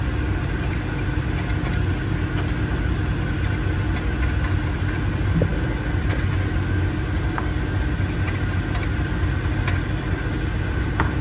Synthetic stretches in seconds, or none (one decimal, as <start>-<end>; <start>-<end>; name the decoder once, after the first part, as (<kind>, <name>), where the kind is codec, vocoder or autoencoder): none